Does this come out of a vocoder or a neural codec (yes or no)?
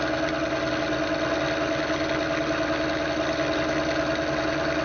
no